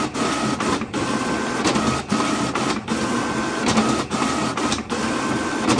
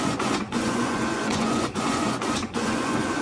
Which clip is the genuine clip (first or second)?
first